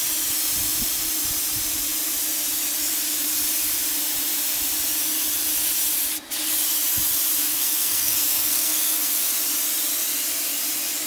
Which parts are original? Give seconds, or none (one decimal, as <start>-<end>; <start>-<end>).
0.0-7.4; 9.3-11.1

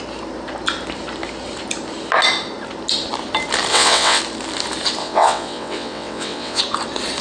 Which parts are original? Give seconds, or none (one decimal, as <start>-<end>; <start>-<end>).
0.0-3.7; 4.2-5.0; 6.6-7.2

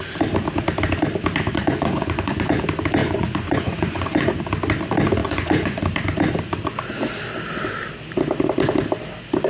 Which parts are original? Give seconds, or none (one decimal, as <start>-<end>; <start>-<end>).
0.0-1.5; 2.6-3.0; 4.4-5.2; 5.8-9.5

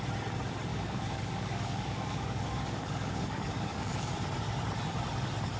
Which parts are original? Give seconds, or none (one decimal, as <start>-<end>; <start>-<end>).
0.0-0.7; 4.1-5.6

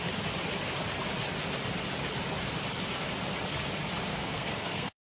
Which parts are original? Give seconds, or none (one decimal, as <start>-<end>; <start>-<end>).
0.0-4.1